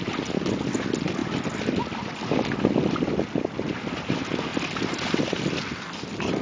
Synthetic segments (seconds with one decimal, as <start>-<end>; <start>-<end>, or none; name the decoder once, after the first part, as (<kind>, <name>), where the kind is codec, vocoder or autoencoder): 4.5-5.5 (vocoder, BigVGAN v2)